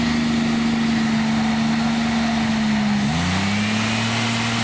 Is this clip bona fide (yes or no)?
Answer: yes